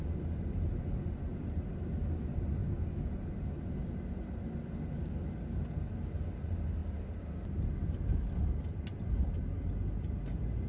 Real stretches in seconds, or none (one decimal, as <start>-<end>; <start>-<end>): 0.0-1.3; 1.9-10.7